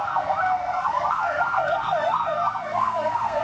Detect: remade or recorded remade